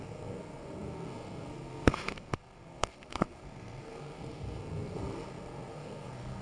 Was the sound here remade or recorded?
remade